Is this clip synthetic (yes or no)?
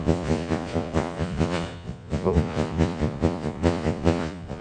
yes